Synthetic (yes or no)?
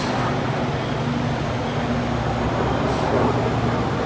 no